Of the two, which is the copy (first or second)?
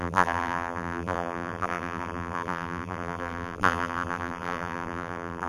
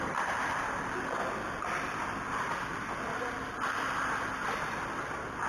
first